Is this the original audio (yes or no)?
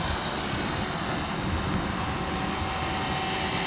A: yes